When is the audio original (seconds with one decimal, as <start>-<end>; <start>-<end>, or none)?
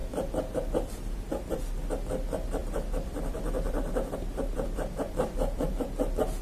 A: 1.6-2.6; 5.7-6.4